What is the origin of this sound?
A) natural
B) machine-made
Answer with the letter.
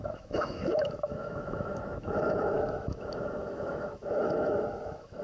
B